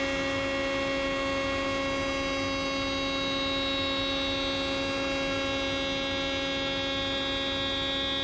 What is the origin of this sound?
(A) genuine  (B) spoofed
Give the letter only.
A